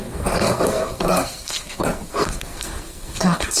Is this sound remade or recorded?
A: remade